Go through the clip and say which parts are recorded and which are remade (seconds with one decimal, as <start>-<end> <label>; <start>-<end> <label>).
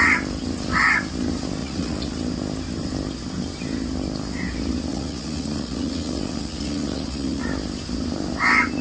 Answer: 0.0-1.6 recorded; 1.6-2.1 remade; 2.1-4.9 recorded; 4.9-7.4 remade; 7.4-8.8 recorded